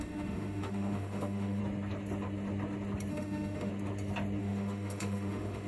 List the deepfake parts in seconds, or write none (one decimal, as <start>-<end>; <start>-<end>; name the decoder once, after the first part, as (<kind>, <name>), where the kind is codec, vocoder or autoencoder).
0.0-1.6 (autoencoder, DAC-VAE); 3.1-3.7; 4.4-5.7